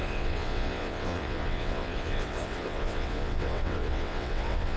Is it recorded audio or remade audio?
remade